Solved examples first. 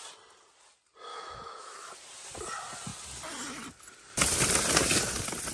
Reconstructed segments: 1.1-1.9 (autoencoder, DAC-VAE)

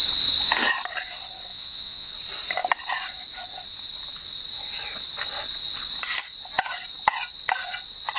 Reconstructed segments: 1.5-2.1 (vocoder, Vocos)